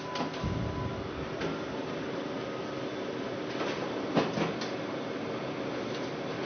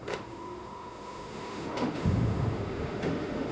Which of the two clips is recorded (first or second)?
first